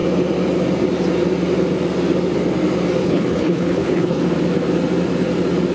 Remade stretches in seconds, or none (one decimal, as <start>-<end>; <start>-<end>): 3.0-4.2